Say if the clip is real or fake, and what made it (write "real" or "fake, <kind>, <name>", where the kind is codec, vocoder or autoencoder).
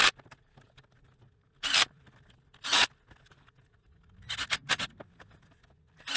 real